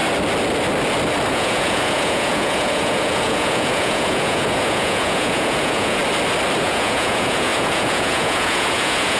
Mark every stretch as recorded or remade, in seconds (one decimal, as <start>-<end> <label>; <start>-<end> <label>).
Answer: 0.0-1.3 recorded; 1.3-6.0 remade; 6.0-6.6 recorded; 6.6-9.2 remade